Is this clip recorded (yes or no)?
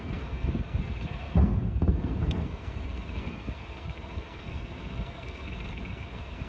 no